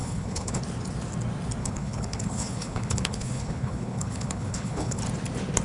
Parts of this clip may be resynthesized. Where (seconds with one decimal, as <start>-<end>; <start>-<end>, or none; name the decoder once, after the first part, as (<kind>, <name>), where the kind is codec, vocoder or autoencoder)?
0.0-0.6 (codec, HILCodec); 1.6-5.0